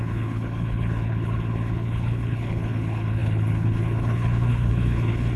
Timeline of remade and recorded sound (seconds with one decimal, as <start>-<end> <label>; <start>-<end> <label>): 0.0-5.4 remade